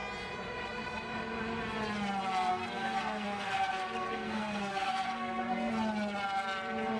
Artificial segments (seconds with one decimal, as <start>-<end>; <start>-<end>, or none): 2.5-5.7